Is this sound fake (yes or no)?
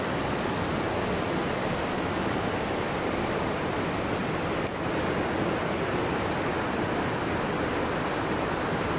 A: no